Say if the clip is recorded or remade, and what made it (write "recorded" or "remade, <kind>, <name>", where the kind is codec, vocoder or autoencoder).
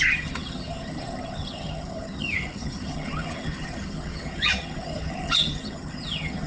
remade, vocoder, HiFi-GAN